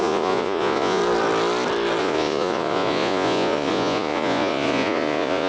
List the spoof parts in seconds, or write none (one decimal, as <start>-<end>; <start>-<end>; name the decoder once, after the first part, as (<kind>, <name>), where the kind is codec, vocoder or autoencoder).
0.0-1.0 (vocoder, Vocos); 2.0-5.5